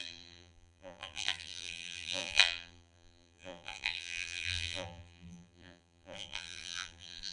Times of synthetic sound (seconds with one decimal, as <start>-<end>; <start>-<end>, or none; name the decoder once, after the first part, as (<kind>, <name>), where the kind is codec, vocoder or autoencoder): 0.0-7.3 (vocoder, BigVGAN v2)